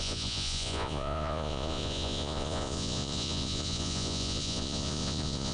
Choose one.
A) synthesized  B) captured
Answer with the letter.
A